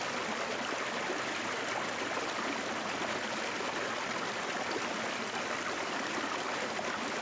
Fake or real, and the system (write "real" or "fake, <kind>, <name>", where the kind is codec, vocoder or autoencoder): real